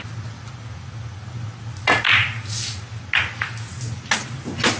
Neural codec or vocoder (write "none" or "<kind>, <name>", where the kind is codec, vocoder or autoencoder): none